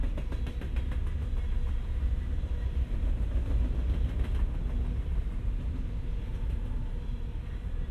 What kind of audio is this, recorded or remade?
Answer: recorded